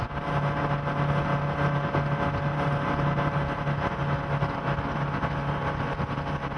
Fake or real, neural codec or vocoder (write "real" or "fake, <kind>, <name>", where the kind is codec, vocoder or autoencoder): real